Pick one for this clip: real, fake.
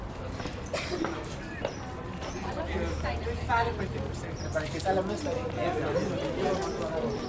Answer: real